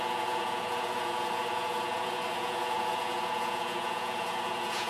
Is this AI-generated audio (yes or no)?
yes